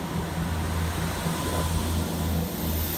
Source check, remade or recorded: recorded